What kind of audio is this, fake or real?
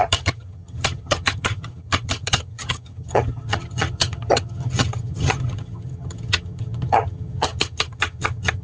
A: fake